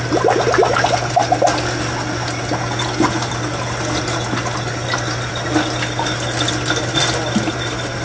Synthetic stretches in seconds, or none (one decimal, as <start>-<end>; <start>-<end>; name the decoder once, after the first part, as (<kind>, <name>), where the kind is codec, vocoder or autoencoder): none